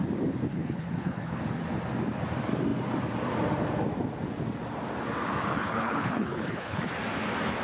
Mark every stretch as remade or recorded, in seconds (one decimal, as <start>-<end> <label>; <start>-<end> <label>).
0.0-0.5 recorded; 0.5-1.4 remade; 1.4-5.5 recorded; 5.5-6.9 remade; 6.9-7.6 recorded